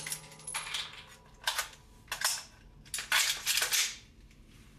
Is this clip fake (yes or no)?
no